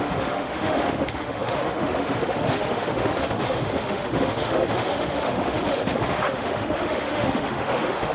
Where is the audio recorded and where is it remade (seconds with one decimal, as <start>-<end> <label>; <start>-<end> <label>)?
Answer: 0.0-8.1 remade